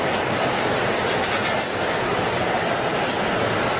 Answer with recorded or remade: recorded